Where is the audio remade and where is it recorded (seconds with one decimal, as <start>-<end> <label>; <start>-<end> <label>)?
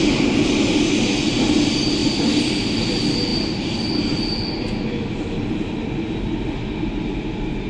0.0-7.7 recorded